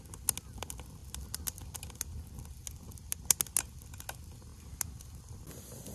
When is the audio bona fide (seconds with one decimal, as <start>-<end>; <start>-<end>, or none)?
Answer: 0.0-5.9

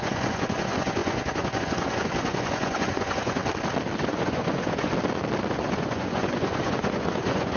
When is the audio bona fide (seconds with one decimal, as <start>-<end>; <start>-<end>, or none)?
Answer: 3.4-4.0; 4.9-5.5

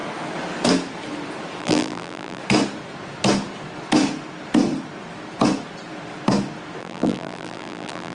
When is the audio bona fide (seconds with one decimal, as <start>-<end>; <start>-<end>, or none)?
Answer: 0.0-1.6; 2.4-6.8

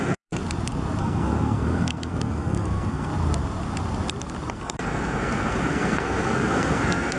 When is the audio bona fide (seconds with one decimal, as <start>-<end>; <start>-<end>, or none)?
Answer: 0.4-1.0; 3.1-4.5

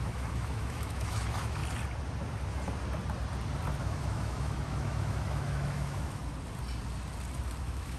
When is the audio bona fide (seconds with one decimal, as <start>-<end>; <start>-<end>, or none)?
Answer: 1.6-3.8; 6.2-7.6

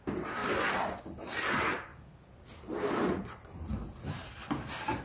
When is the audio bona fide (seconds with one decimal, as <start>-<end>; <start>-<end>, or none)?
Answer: 0.0-5.0

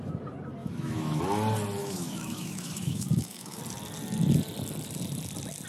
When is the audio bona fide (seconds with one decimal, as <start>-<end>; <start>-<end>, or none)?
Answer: 0.0-0.6; 1.2-1.8; 3.6-5.7

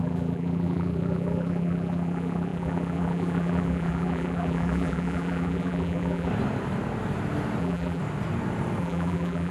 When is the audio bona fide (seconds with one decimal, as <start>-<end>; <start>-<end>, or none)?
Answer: 6.3-7.6; 8.0-8.8